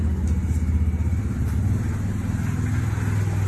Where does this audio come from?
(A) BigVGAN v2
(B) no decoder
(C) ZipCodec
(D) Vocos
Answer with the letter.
B